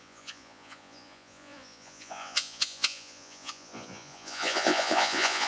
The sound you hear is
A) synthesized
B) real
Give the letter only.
A